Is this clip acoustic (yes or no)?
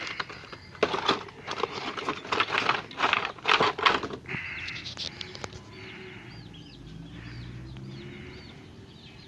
yes